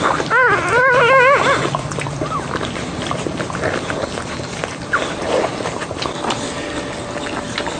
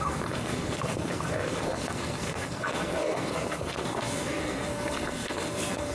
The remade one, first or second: second